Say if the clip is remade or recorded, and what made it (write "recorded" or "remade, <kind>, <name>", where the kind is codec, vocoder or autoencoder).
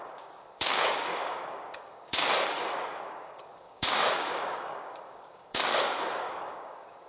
remade, codec, DAC